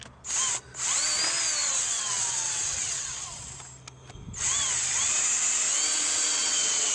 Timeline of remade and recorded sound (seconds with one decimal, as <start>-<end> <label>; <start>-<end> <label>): 0.0-1.6 recorded; 1.6-3.4 remade; 3.4-5.9 recorded; 5.9-6.9 remade